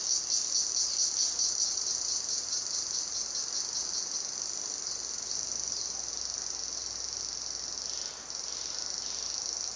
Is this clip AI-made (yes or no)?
no